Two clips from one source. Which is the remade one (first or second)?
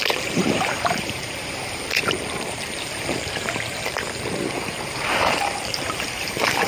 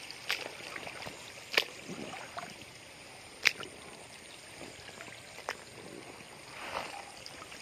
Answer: first